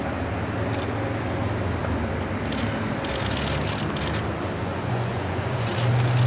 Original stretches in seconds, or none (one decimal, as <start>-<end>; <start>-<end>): 0.0-4.6; 5.7-6.3